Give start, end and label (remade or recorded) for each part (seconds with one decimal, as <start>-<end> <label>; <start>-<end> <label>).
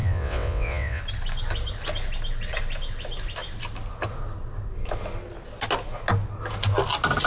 0.0-1.0 remade; 1.0-7.3 recorded